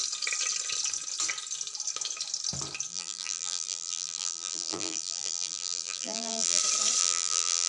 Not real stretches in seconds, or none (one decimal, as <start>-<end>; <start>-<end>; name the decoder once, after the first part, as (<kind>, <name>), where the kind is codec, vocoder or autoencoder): 2.9-6.6 (vocoder, BigVGAN v2); 7.0-7.7